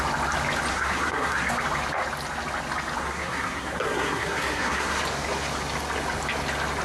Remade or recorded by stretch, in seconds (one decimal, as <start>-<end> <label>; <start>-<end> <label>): 0.0-0.7 recorded; 0.7-1.5 remade; 1.5-3.0 recorded; 3.0-5.0 remade; 5.0-6.8 recorded